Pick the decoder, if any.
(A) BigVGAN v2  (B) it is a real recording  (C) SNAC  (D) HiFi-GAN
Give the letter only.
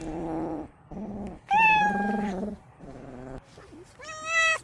A